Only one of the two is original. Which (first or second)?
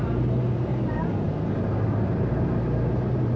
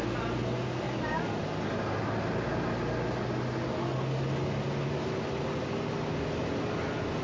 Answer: second